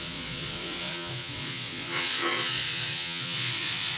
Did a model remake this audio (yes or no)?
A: yes